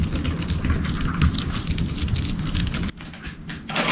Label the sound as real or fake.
real